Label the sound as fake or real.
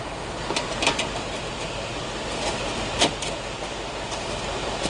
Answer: fake